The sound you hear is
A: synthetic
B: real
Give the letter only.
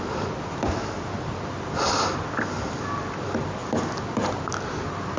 B